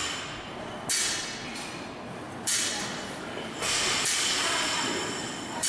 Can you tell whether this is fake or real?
fake